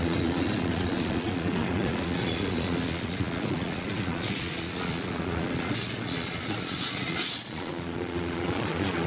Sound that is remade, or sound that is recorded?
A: remade